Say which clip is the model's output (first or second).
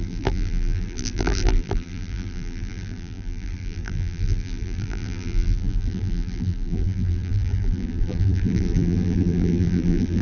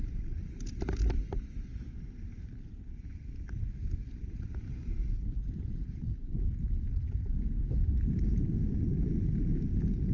first